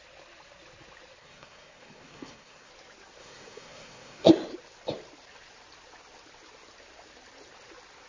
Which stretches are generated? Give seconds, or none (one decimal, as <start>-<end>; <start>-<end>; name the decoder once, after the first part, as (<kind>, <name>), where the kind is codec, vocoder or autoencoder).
1.2-2.7 (codec, SNAC); 3.2-4.3